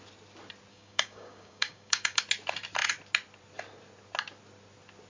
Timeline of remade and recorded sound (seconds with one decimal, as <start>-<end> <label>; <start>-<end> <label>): 0.0-0.7 recorded; 0.7-2.2 remade; 2.2-5.1 recorded